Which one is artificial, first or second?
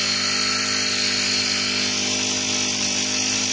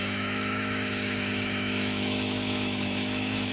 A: second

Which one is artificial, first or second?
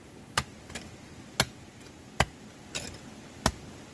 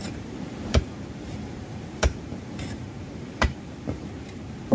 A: second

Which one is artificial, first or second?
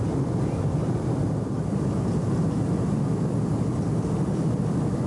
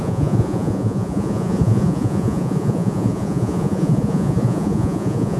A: second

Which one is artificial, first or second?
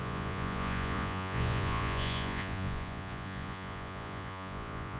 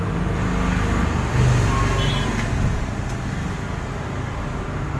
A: first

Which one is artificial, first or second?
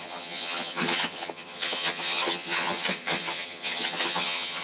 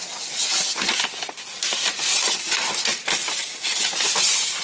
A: first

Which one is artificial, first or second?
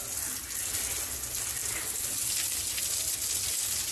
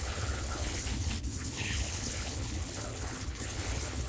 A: second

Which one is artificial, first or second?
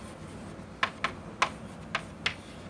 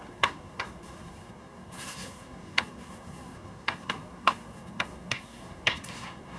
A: second